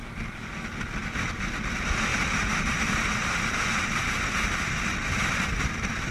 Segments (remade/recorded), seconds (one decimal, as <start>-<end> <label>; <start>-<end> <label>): 0.0-2.1 recorded; 2.1-4.8 remade; 4.8-6.1 recorded